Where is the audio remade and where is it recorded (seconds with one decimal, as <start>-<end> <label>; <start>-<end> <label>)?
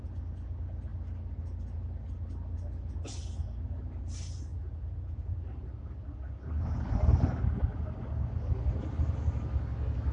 0.0-4.5 recorded; 4.5-5.3 remade; 5.3-10.1 recorded